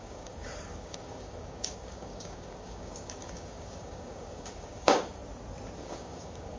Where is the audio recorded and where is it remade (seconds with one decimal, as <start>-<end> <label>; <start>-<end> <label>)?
0.0-5.2 remade; 5.2-5.8 recorded; 5.8-6.6 remade

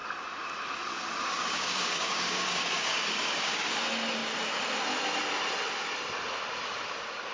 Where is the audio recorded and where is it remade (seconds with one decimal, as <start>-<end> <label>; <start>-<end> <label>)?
0.0-1.2 recorded; 1.2-3.8 remade; 3.8-7.3 recorded

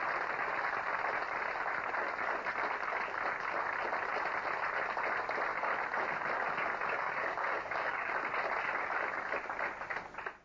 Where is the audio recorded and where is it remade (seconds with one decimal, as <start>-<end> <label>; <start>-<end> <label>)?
0.0-6.8 recorded; 6.8-8.1 remade; 8.1-10.4 recorded

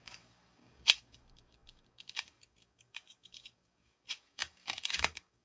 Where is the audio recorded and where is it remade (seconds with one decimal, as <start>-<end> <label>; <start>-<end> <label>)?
0.0-5.4 remade